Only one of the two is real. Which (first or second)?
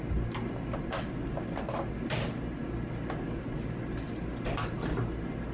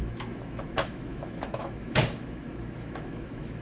first